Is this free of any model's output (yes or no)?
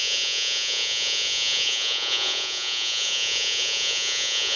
no